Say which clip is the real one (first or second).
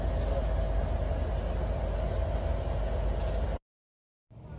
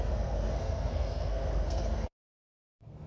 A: first